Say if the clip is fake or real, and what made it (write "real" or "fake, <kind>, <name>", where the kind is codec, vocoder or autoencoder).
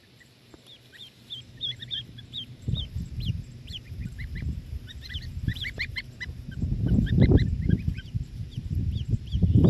fake, vocoder, BigVGAN v2